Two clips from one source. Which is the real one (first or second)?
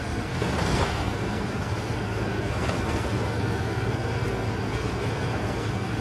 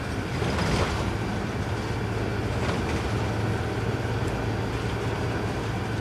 second